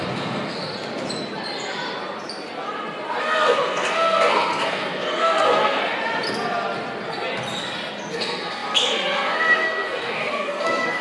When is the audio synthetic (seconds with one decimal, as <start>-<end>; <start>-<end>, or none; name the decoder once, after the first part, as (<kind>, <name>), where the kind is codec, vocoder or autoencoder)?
0.0-0.6 (codec, SNAC); 3.2-5.8; 8.1-11.0